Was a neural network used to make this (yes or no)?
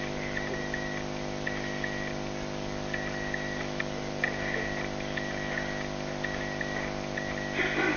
no